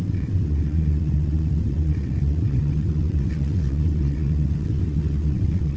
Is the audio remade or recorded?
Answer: remade